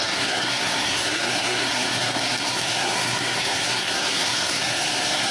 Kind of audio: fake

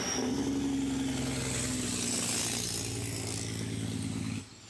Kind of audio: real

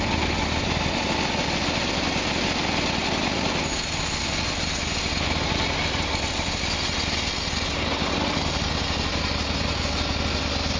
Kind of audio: real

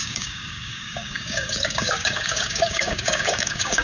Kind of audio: fake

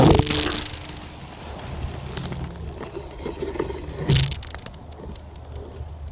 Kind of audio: real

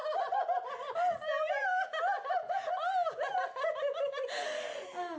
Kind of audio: real